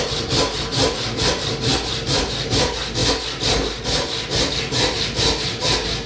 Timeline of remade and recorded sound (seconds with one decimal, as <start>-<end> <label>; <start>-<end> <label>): 0.0-1.7 recorded; 1.7-2.5 remade; 2.5-6.1 recorded